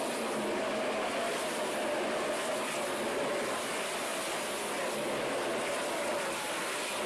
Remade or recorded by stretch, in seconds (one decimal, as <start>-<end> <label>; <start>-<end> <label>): 0.0-7.1 recorded